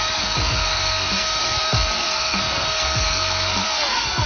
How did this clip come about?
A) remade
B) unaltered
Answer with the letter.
A